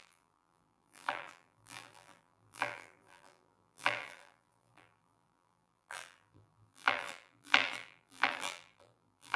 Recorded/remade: remade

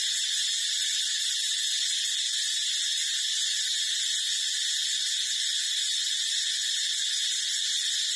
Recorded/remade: recorded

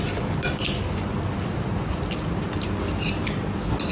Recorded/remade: recorded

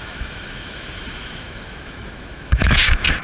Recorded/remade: remade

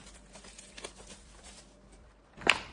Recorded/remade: remade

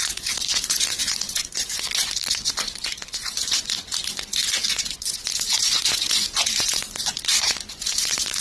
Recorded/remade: remade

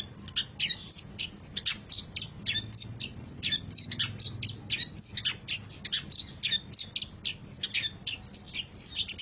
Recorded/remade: recorded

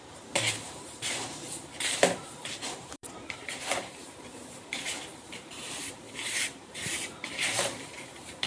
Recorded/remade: remade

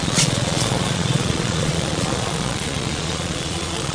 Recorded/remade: remade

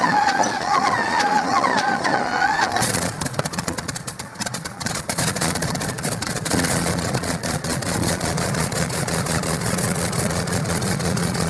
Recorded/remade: remade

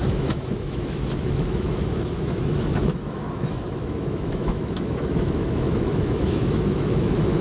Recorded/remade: remade